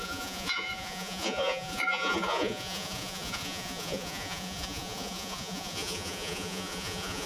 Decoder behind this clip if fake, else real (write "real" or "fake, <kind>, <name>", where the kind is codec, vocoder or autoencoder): fake, vocoder, Vocos